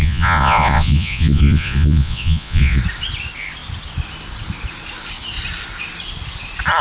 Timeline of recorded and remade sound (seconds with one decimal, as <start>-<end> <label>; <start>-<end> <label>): 0.0-2.8 remade; 2.8-6.8 recorded